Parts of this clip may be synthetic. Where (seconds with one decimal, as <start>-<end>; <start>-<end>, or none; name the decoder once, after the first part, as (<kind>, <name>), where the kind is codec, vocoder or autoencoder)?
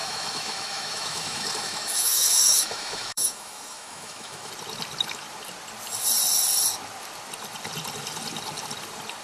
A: 0.0-4.5 (autoencoder, DAC-VAE)